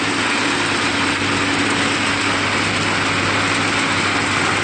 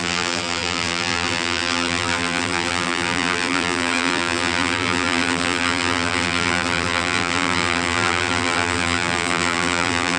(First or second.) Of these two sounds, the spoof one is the second